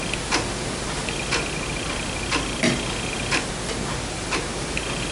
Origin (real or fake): real